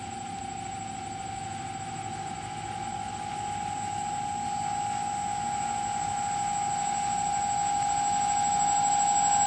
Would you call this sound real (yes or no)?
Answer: yes